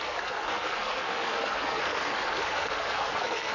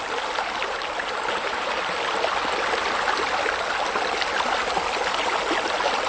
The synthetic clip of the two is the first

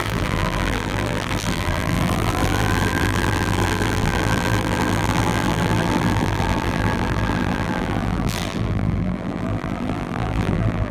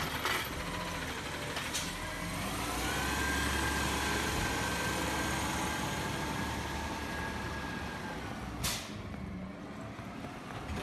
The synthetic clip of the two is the first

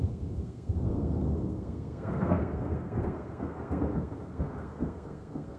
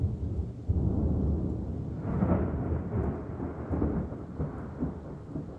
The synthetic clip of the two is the first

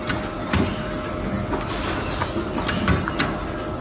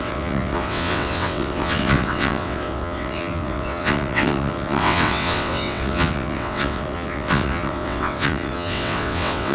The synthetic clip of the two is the second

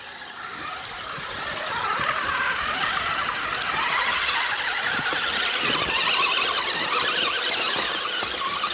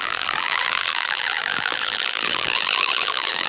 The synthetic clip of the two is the second